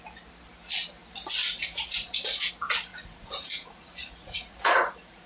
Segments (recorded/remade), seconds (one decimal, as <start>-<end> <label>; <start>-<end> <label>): 0.0-1.4 recorded; 1.4-2.5 remade; 2.5-2.9 recorded; 2.9-5.3 remade